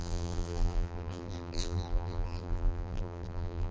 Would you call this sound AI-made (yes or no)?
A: yes